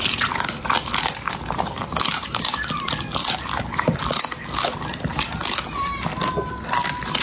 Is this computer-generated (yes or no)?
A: yes